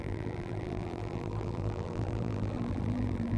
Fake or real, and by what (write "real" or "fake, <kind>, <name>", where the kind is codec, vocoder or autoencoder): fake, vocoder, BigVGAN v2